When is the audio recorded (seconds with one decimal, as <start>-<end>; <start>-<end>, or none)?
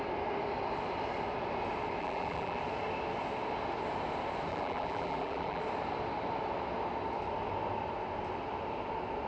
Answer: 0.0-2.0; 2.6-4.5; 5.6-9.3